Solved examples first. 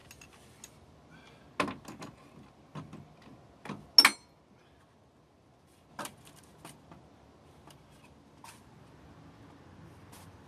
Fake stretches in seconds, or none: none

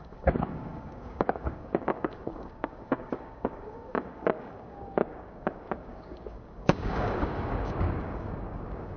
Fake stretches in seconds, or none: 0.0-9.0 (codec, DAC)

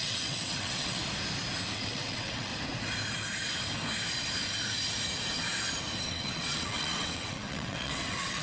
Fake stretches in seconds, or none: 0.0-1.0 (vocoder, WaveNeXt); 1.7-2.5; 6.1-8.4

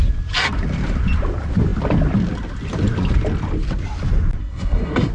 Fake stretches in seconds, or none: 4.4-5.1 (codec, SNAC)